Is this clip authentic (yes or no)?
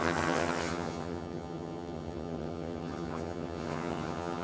no